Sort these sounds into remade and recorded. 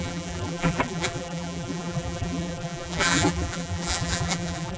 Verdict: remade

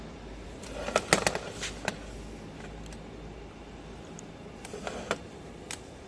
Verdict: recorded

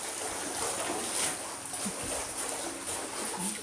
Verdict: recorded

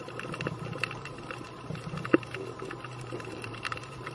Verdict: remade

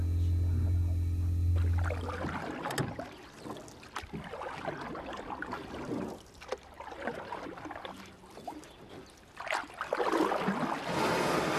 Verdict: recorded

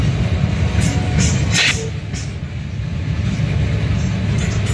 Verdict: recorded